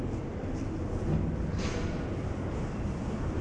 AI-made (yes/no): no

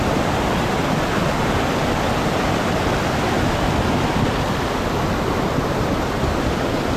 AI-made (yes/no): no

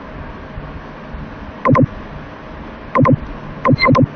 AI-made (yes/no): no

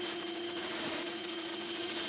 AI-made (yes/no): yes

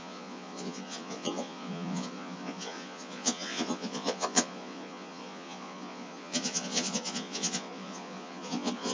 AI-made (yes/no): yes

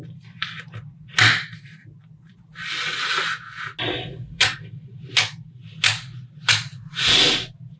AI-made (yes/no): no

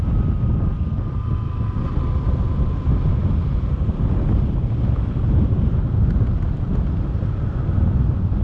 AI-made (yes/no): no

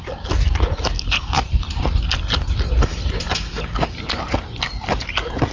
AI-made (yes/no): no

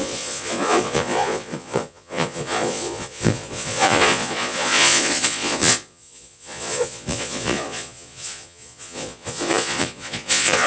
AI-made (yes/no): yes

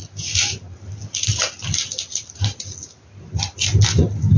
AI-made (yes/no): no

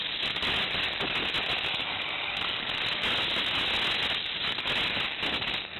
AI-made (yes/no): no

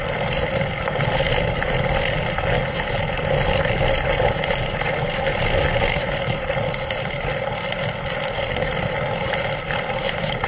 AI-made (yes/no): no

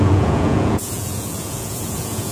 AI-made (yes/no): yes